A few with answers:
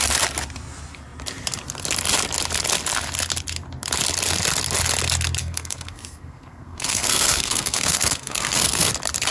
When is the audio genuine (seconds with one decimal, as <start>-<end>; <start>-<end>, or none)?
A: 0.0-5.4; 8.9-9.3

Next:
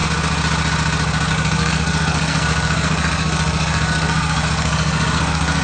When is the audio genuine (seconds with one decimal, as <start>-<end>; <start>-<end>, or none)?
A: 0.0-1.3

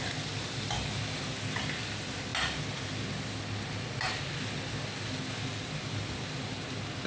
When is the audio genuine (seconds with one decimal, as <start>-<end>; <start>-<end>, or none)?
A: 0.0-7.1

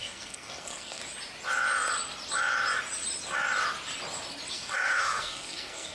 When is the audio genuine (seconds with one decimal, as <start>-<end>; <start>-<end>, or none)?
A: 1.0-4.5

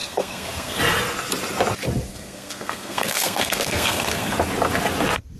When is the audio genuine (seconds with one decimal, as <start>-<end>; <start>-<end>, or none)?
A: 0.8-2.1; 4.3-5.4

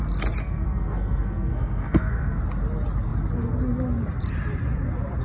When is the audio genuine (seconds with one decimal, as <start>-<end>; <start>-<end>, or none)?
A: 0.0-0.4; 2.4-5.2